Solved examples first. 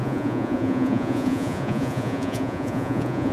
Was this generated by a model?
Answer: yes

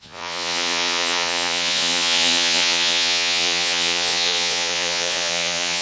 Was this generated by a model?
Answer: yes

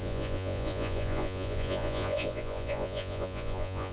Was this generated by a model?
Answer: yes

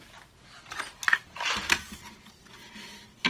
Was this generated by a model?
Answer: no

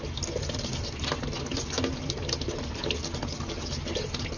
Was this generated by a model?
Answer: no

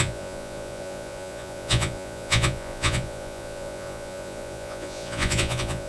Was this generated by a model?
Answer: yes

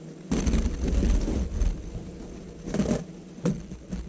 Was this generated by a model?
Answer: no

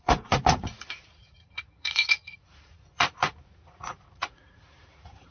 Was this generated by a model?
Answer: yes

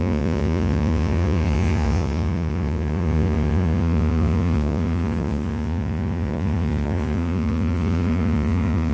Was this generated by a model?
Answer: yes